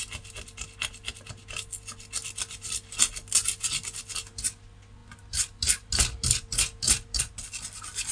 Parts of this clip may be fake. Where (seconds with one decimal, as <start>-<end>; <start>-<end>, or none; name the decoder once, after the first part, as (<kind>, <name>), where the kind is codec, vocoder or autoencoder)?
none